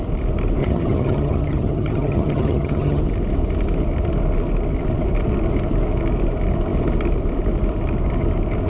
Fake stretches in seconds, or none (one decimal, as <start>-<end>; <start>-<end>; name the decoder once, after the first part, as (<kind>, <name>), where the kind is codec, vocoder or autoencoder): 0.6-3.0 (vocoder, HiFi-GAN)